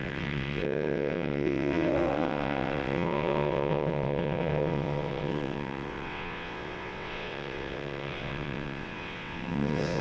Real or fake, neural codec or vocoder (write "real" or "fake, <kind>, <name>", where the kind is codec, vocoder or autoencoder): fake, vocoder, WaveNeXt